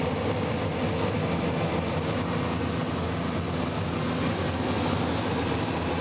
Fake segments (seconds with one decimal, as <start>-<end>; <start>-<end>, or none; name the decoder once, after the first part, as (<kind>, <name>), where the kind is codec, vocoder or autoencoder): none